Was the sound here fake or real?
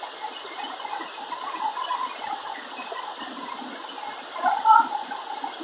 real